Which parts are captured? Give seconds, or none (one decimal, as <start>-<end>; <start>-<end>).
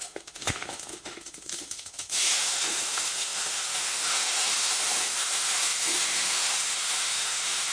none